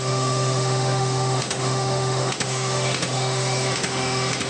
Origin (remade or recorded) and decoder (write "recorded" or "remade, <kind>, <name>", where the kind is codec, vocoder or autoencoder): remade, autoencoder, DAC-VAE